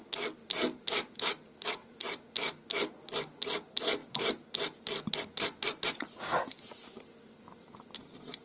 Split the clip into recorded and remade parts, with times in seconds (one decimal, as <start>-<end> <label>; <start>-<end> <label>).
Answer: 0.0-8.4 recorded